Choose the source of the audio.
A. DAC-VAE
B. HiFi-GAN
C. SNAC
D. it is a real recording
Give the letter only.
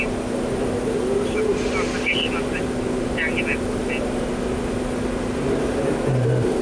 D